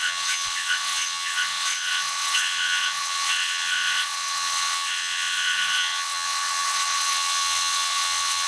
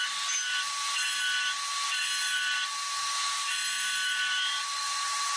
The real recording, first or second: second